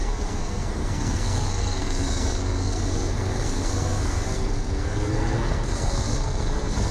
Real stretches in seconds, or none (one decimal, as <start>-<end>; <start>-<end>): none